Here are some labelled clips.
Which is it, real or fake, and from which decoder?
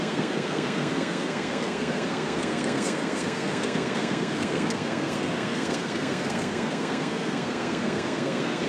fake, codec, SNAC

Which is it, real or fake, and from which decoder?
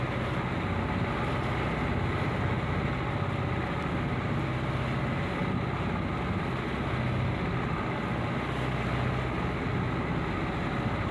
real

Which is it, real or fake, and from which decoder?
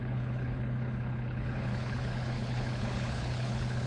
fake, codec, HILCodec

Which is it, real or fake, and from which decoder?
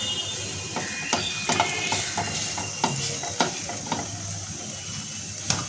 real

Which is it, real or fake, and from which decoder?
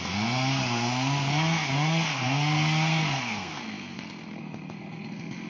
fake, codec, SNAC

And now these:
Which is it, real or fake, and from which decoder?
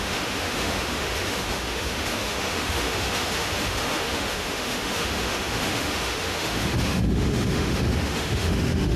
fake, autoencoder, DAC-VAE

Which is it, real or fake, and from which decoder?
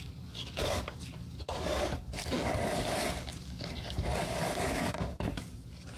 fake, codec, DAC